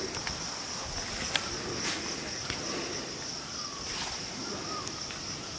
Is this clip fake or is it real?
real